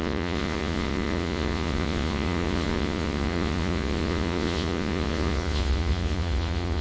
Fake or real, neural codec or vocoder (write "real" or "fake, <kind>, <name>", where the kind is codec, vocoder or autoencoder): fake, vocoder, Vocos